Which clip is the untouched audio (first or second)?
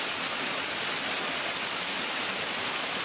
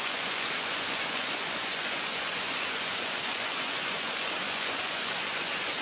first